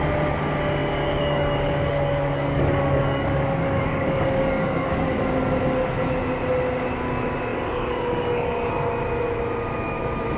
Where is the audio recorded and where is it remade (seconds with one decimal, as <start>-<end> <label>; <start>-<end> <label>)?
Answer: 0.0-0.8 recorded; 0.8-5.2 remade; 5.2-7.5 recorded; 7.5-8.7 remade; 8.7-10.4 recorded